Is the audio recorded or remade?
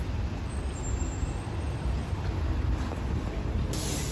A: recorded